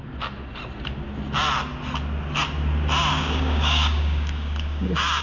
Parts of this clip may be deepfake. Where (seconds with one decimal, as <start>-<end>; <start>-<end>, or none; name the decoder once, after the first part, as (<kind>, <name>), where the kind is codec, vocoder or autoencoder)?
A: 3.1-5.2 (codec, DAC)